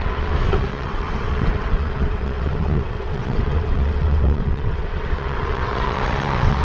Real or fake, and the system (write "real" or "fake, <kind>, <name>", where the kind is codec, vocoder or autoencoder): fake, vocoder, WaveNeXt